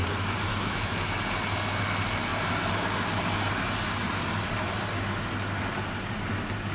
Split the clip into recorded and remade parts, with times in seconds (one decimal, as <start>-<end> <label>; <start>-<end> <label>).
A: 0.0-0.5 recorded; 0.5-1.2 remade; 1.2-6.7 recorded